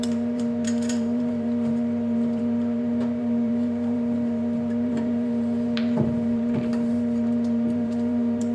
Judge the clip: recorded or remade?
remade